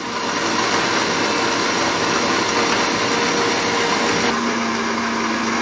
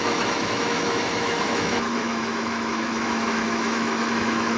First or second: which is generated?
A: second